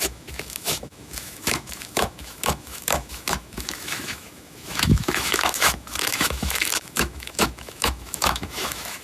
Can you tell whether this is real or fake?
fake